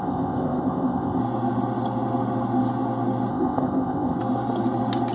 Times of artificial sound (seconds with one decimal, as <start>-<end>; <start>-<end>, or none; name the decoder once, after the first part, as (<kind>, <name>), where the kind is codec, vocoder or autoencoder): 0.0-1.2 (codec, ZipCodec); 3.3-4.2